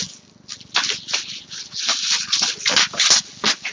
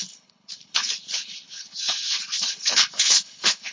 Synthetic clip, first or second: second